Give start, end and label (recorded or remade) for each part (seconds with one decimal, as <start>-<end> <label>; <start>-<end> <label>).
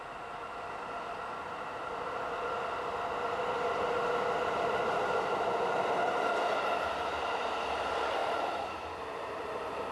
0.0-8.2 recorded; 8.2-8.7 remade; 8.7-9.9 recorded